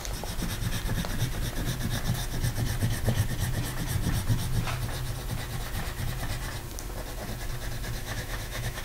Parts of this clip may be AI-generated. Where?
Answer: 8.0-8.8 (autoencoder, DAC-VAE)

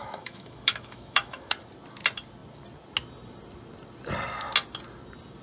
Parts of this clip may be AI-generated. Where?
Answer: 0.0-1.5 (autoencoder, DAC-VAE)

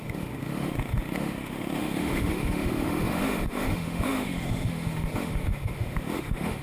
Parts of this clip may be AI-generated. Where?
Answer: 0.0-6.6 (autoencoder, DAC-VAE)

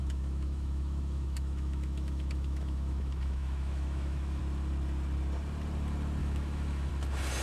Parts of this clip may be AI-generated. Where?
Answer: 0.0-4.4 (autoencoder, DAC-VAE); 6.2-6.9

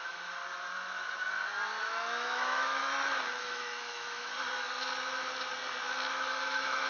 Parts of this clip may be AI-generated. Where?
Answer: 0.0-0.4 (autoencoder, DAC-VAE); 1.8-2.8; 3.4-4.3; 6.1-6.9

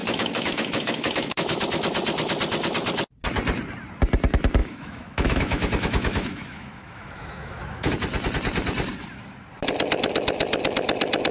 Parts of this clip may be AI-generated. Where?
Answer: 0.0-1.6 (autoencoder, DAC-VAE); 4.6-7.9

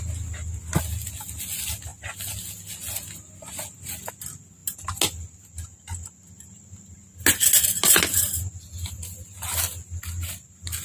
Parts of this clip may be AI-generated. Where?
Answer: none